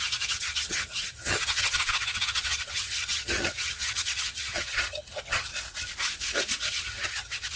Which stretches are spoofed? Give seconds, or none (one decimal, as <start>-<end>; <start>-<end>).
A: 0.0-5.5; 6.7-7.6